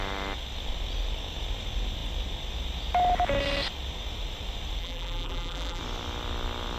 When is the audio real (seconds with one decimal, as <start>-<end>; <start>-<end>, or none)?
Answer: 0.0-4.8; 5.8-6.8